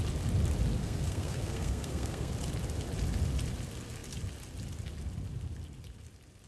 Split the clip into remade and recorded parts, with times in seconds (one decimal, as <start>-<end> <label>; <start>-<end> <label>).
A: 0.0-0.8 recorded; 0.8-2.3 remade; 2.3-6.5 recorded